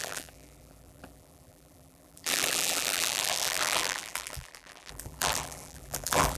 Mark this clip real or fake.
fake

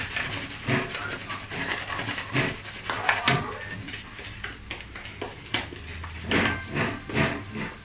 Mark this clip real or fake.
real